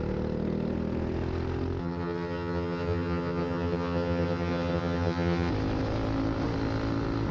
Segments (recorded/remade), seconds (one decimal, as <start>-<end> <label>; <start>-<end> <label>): 0.0-1.8 recorded; 1.8-5.5 remade; 5.5-7.3 recorded